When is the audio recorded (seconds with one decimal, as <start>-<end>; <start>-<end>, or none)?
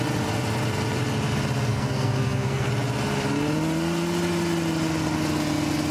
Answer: 0.0-1.7; 2.7-5.9